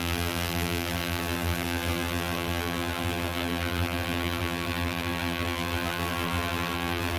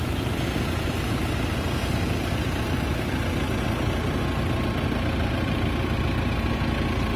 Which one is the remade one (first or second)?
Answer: first